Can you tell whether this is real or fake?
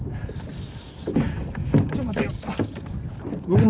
real